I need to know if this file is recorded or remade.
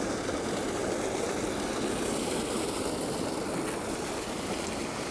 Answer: recorded